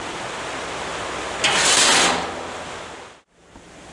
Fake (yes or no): no